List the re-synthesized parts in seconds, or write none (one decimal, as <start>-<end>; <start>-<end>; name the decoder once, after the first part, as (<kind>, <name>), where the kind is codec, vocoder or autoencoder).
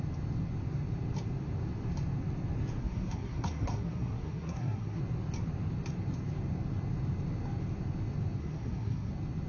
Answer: 2.8-5.0 (codec, SNAC); 8.4-9.1